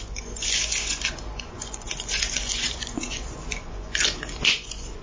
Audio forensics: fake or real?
fake